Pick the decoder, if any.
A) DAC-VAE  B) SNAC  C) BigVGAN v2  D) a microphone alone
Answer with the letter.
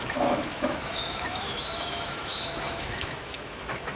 A